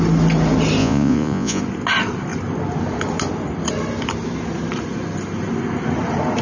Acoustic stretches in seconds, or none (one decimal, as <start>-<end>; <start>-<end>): 0.0-0.8; 1.6-6.4